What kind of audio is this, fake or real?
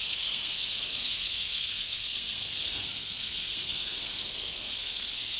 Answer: fake